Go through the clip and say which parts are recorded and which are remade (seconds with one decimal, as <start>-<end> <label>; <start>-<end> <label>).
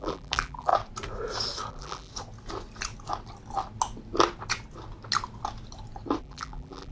0.0-0.7 remade; 0.7-1.7 recorded; 1.7-2.1 remade; 2.1-6.2 recorded; 6.2-6.9 remade